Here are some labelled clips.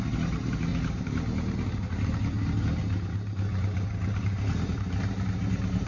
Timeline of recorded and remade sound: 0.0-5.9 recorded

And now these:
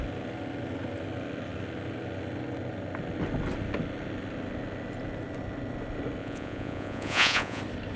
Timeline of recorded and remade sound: 0.0-6.2 recorded; 6.2-7.6 remade; 7.6-8.0 recorded

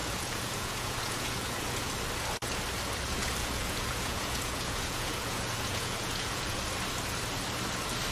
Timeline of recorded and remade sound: 0.0-1.9 remade; 1.9-3.4 recorded; 3.4-6.6 remade; 6.6-8.1 recorded

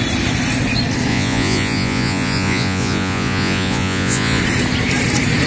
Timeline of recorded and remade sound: 0.0-1.1 recorded; 1.1-4.4 remade; 4.4-5.5 recorded

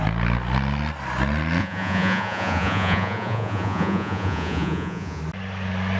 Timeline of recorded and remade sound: 0.0-1.6 recorded; 1.6-5.2 remade; 5.2-6.0 recorded